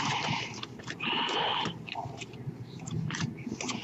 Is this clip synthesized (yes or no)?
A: yes